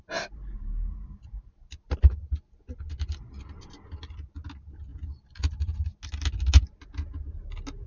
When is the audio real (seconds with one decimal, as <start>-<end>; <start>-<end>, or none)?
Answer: 0.0-7.9